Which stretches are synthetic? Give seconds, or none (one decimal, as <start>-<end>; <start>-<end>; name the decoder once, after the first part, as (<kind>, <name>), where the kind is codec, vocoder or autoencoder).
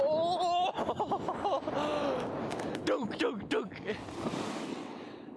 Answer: 4.7-5.4 (vocoder, WaveNeXt)